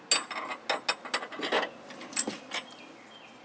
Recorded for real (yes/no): yes